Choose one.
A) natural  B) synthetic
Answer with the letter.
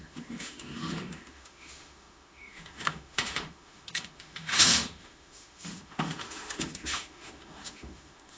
B